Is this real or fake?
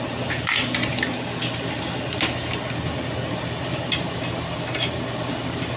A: real